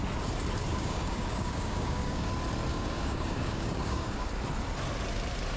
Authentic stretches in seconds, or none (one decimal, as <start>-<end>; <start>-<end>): 0.0-0.7; 2.3-2.7; 4.3-5.6